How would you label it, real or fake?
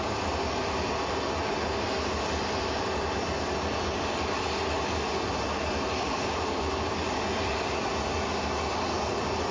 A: real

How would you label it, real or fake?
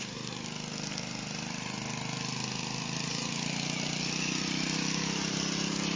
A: real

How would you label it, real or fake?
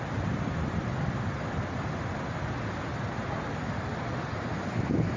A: real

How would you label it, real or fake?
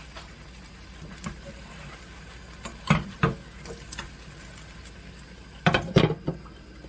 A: real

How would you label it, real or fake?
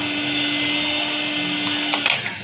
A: real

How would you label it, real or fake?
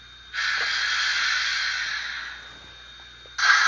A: real